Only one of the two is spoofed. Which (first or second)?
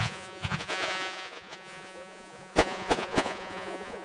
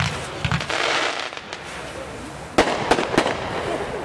first